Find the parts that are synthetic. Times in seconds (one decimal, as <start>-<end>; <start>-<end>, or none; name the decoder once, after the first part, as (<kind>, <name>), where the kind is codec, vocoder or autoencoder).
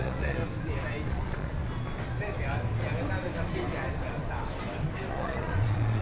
0.0-0.4 (vocoder, Vocos); 1.1-1.5; 5.1-6.0